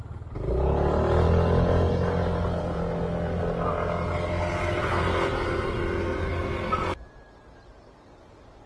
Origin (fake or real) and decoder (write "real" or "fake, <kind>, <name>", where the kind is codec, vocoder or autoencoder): real